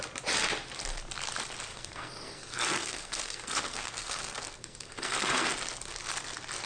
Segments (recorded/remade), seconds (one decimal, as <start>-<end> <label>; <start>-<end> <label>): 0.0-1.7 recorded; 1.7-5.5 remade; 5.5-6.7 recorded